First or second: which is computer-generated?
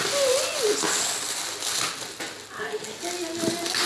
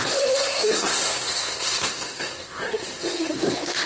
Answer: second